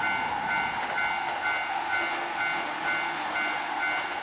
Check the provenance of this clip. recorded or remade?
recorded